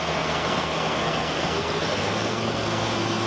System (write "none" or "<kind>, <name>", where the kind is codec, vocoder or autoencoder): codec, SNAC